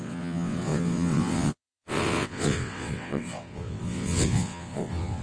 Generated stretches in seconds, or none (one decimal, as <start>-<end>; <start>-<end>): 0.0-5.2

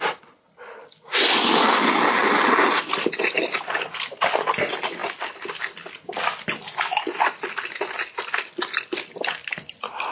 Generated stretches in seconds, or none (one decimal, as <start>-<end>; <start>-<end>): none

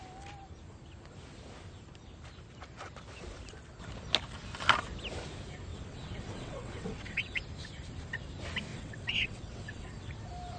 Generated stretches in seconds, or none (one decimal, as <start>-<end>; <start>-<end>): 5.7-7.4; 8.7-10.1